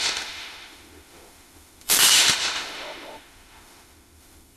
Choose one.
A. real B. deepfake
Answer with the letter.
B